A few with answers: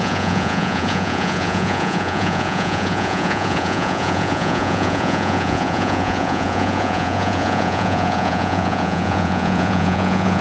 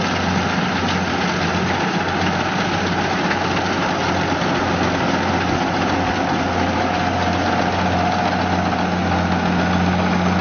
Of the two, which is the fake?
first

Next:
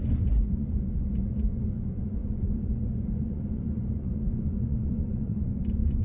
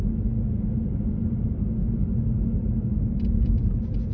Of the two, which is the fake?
first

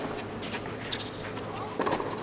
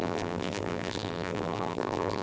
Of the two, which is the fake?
second